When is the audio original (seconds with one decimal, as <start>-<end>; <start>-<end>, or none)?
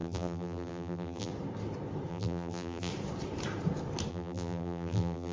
1.3-2.1; 2.9-4.1